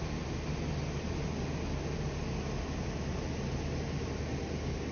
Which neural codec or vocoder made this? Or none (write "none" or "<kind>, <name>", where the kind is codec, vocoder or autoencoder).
none